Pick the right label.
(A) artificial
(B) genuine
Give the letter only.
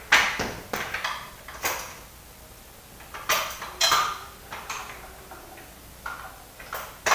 B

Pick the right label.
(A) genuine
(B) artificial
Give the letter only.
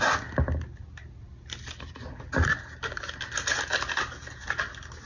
A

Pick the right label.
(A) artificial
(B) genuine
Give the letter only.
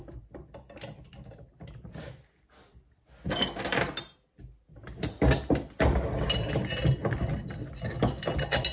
B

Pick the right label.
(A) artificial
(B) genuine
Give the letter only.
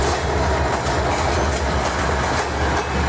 B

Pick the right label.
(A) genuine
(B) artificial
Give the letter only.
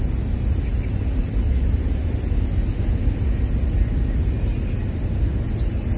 A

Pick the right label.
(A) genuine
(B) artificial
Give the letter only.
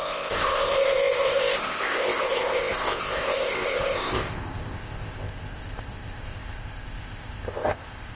B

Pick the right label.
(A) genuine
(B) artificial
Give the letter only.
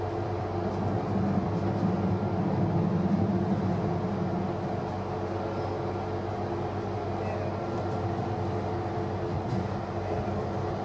A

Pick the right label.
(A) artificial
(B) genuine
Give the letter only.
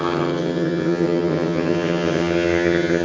A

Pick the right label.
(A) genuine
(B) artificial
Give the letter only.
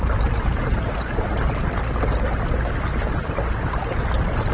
A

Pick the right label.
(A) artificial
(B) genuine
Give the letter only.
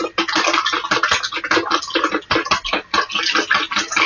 B